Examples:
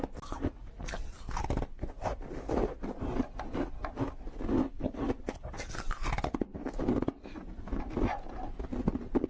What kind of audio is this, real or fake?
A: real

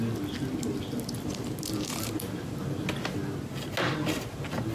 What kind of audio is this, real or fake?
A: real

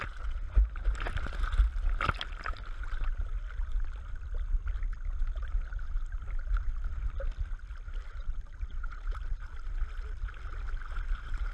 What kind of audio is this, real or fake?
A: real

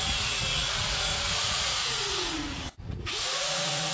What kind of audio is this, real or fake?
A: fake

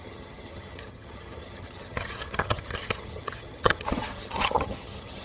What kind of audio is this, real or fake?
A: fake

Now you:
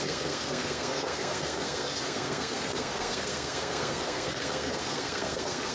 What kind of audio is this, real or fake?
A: fake